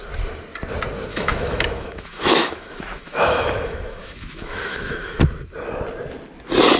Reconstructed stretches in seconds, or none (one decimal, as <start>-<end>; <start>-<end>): 1.1-5.2